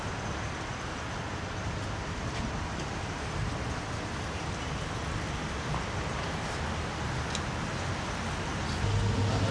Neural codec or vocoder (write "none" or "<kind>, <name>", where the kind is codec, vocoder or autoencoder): none